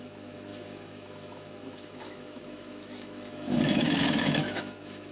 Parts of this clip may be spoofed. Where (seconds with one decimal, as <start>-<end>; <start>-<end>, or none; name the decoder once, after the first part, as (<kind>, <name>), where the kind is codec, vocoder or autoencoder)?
0.0-5.1 (autoencoder, DAC-VAE)